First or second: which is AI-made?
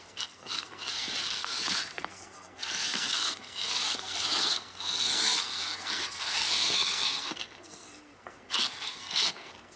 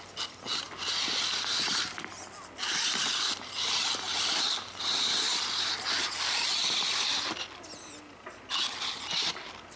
first